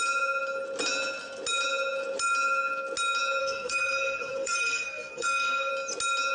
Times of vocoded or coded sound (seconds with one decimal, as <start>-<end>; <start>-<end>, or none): 3.4-5.7